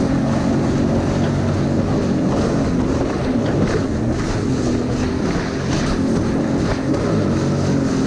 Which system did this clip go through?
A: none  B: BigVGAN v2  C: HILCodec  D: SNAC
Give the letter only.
A